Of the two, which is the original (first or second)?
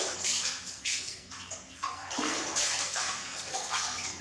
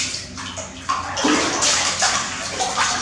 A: second